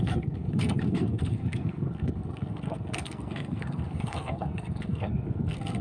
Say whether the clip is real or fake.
fake